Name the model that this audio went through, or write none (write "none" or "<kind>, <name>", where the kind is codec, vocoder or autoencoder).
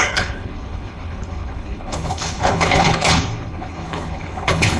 codec, HILCodec